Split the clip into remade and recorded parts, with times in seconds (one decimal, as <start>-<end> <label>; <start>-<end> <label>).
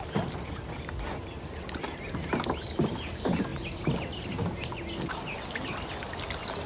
0.0-6.7 recorded